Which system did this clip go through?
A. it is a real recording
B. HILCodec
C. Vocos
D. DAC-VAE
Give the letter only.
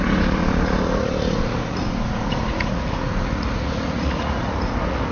C